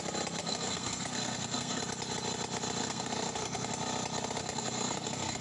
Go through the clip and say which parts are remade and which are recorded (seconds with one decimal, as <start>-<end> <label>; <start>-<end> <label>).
0.0-0.4 recorded; 0.4-1.8 remade; 1.8-2.8 recorded; 2.8-3.7 remade; 3.7-4.4 recorded; 4.4-5.4 remade